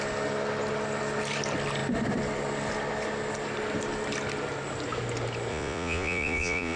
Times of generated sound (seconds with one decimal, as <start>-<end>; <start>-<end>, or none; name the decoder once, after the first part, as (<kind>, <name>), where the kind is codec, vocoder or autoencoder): 5.5-6.8 (vocoder, Vocos)